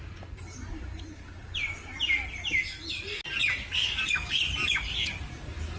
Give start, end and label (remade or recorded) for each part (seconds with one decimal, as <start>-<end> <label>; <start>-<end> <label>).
0.0-3.8 recorded; 3.8-4.4 remade; 4.4-5.8 recorded